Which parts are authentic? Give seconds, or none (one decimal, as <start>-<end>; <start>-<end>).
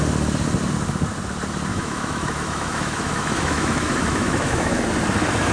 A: 0.0-1.7; 4.8-5.5